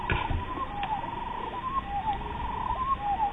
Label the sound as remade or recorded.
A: recorded